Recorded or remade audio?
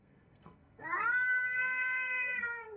remade